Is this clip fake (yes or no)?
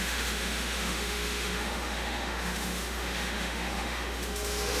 yes